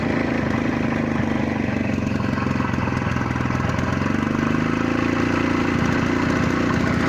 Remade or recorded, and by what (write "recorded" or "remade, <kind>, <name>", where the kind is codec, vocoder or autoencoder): recorded